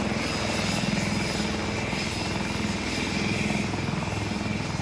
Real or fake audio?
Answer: real